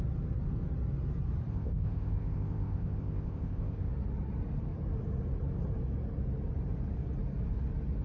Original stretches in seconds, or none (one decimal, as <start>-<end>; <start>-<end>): 0.0-1.5; 3.9-8.0